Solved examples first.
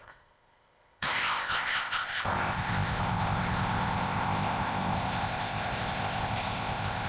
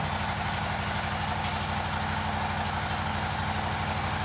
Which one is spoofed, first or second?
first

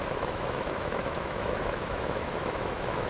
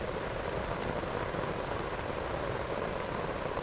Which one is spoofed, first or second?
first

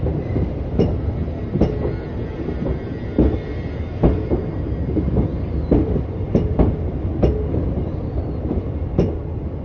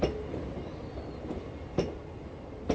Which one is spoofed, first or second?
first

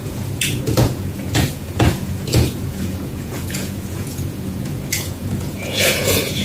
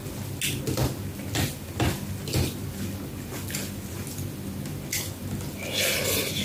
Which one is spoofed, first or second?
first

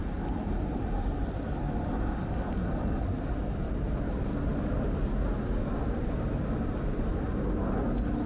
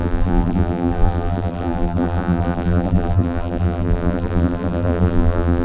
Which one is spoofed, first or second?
second